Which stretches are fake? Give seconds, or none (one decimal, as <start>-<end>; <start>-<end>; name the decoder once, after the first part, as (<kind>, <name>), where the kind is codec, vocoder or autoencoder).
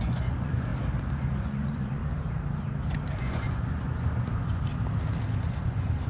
0.0-0.7 (vocoder, Vocos); 1.2-2.0; 3.2-4.7; 5.3-6.1